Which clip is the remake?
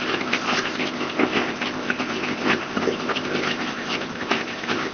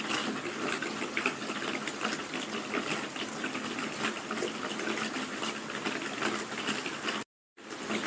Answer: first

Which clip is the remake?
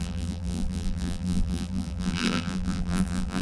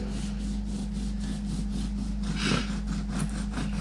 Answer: first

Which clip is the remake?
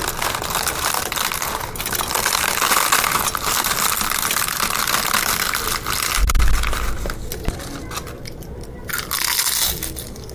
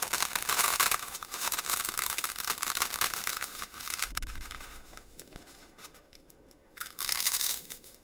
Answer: second